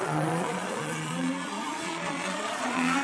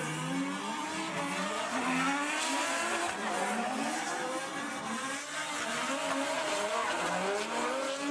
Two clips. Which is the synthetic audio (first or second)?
first